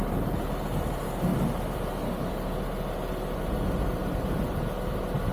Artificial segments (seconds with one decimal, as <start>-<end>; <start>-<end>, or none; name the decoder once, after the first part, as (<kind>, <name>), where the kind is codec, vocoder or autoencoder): none